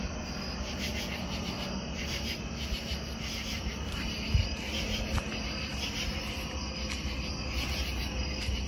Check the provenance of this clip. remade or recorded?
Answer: recorded